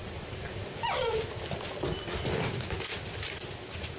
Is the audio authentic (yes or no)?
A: yes